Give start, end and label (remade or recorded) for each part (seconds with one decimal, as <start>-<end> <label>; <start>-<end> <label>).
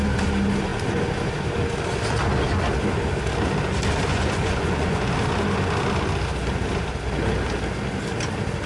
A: 0.0-4.1 recorded; 4.1-5.1 remade; 5.1-8.7 recorded